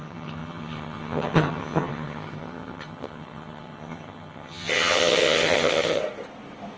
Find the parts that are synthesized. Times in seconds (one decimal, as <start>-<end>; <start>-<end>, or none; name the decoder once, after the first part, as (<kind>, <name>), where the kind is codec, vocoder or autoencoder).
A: 0.0-6.0 (vocoder, HiFi-GAN)